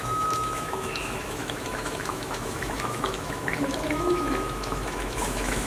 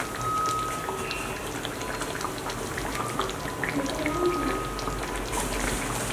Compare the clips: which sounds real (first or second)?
second